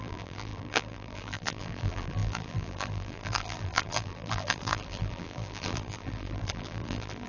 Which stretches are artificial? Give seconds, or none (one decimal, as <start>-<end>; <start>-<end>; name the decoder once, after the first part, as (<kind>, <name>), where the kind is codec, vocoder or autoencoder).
0.0-7.3 (vocoder, BigVGAN v2)